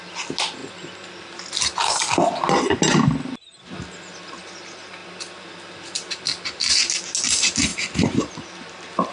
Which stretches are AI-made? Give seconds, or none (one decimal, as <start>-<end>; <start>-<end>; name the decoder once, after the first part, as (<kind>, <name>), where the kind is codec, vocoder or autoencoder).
7.7-8.4 (vocoder, BigVGAN v2)